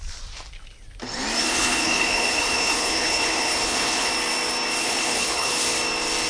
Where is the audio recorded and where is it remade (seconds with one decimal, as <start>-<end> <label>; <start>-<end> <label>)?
0.0-1.4 recorded; 1.4-4.1 remade; 4.1-4.8 recorded; 4.8-5.6 remade; 5.6-6.3 recorded